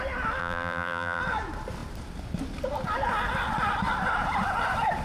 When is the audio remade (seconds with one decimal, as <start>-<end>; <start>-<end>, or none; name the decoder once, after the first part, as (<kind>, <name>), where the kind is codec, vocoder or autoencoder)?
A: 0.4-1.2 (vocoder, BigVGAN v2)